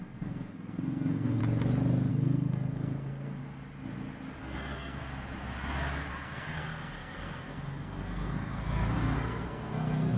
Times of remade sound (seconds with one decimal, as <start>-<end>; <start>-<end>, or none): 0.0-1.4; 2.1-3.4; 4.4-5.0; 6.1-10.2